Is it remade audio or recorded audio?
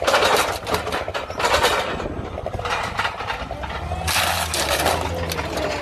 recorded